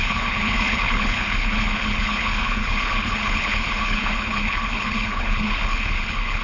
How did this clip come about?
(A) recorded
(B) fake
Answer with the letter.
B